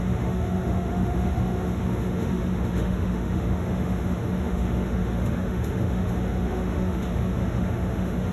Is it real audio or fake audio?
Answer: fake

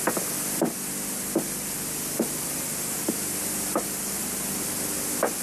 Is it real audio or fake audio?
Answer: real